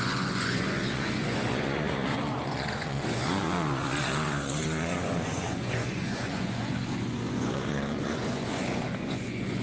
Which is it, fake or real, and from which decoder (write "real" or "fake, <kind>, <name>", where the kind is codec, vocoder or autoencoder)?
fake, vocoder, Vocos